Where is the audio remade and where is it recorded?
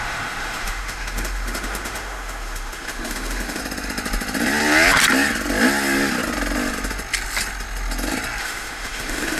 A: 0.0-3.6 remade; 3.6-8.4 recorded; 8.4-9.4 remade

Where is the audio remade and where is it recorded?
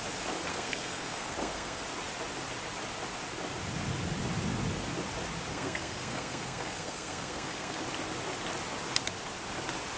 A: 0.0-0.5 recorded; 0.5-1.8 remade; 1.8-5.5 recorded; 5.5-7.8 remade; 7.8-10.0 recorded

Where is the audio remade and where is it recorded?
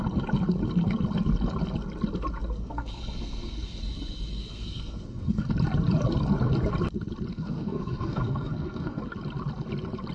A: 0.0-2.6 recorded; 2.6-3.8 remade; 3.8-4.4 recorded; 4.4-5.5 remade; 5.5-7.3 recorded; 7.3-9.0 remade; 9.0-10.1 recorded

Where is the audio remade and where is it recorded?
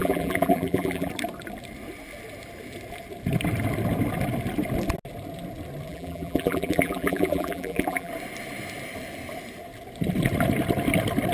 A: 0.0-1.1 remade; 1.1-5.9 recorded; 5.9-8.1 remade; 8.1-11.3 recorded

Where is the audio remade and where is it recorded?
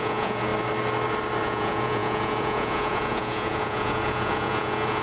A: 0.0-0.5 remade; 0.5-1.4 recorded; 1.4-5.0 remade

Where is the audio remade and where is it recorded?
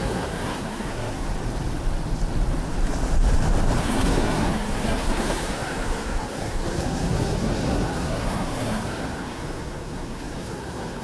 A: 0.0-1.3 remade; 1.3-3.8 recorded; 3.8-11.0 remade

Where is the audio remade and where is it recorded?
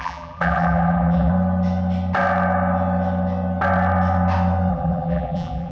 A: 0.0-1.3 remade; 1.3-4.7 recorded; 4.7-5.7 remade